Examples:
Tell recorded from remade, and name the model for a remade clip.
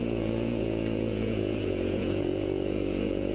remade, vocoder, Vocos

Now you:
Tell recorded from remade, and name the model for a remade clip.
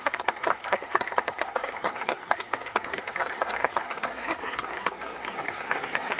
remade, codec, SNAC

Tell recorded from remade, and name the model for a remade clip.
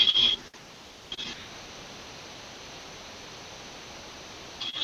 recorded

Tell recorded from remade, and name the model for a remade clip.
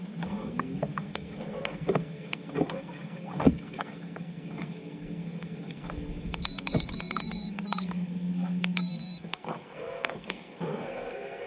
remade, codec, SNAC